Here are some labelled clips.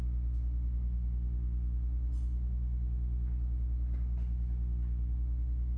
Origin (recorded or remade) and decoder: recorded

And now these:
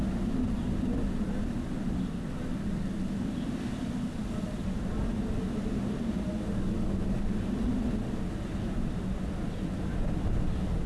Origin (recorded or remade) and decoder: recorded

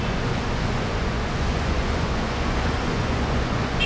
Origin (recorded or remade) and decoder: remade, vocoder, Vocos